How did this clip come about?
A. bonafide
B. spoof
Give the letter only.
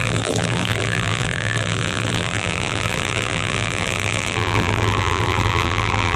B